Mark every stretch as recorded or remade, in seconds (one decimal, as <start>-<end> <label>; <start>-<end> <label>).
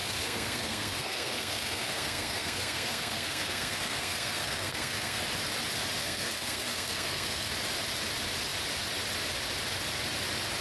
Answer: 0.0-5.2 remade; 5.2-6.0 recorded; 6.0-7.5 remade; 7.5-10.6 recorded